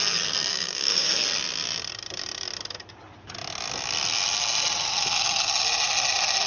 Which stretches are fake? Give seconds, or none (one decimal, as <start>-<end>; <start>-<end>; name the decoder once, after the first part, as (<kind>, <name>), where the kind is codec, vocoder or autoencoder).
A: 0.5-1.1 (codec, DAC)

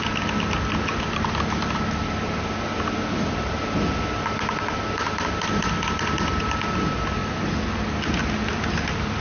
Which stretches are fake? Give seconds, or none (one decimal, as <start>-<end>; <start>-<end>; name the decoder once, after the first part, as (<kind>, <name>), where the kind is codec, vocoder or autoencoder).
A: none

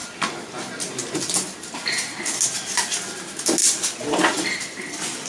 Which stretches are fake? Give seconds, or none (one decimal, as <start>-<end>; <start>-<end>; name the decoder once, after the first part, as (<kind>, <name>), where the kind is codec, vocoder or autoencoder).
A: none

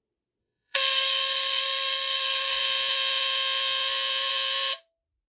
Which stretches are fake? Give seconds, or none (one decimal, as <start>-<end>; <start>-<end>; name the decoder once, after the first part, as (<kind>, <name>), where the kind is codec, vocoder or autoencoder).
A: 0.4-2.6 (codec, SNAC)

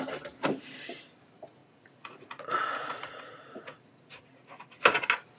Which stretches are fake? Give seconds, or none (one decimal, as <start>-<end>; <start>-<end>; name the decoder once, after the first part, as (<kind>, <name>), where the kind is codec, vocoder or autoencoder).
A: 1.6-4.8 (vocoder, Vocos)